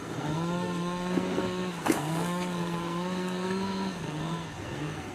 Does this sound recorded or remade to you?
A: remade